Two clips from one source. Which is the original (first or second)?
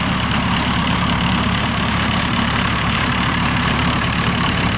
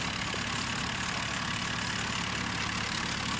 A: second